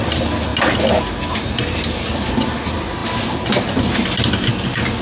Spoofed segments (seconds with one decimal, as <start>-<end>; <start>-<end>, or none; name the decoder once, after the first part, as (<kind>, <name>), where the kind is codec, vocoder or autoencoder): none